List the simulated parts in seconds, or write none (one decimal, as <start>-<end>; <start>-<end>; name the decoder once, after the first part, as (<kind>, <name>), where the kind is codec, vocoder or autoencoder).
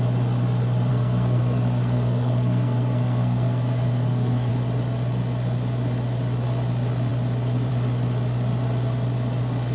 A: 0.9-4.5 (codec, SNAC)